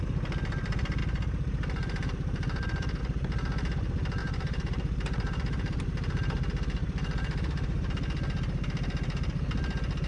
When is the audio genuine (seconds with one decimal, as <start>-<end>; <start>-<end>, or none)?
0.0-1.0; 3.0-4.2; 5.8-6.8; 7.9-10.1